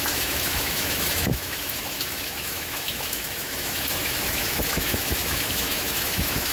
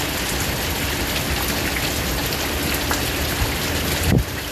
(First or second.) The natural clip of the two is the second